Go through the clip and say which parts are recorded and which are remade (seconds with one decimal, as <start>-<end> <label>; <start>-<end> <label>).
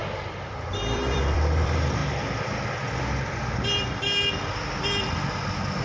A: 0.0-0.7 recorded; 0.7-2.0 remade; 2.0-5.8 recorded